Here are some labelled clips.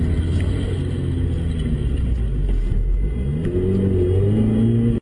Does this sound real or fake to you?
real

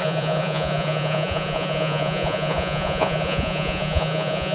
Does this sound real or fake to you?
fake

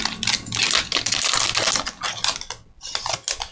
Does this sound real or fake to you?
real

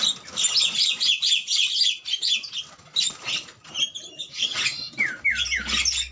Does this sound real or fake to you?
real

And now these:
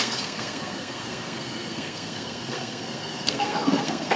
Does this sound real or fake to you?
fake